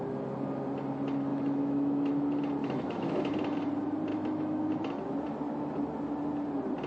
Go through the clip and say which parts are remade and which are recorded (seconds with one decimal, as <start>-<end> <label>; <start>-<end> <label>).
0.0-1.3 recorded; 1.3-2.1 remade; 2.1-2.6 recorded; 2.6-3.2 remade; 3.2-4.1 recorded; 4.1-4.7 remade; 4.7-6.9 recorded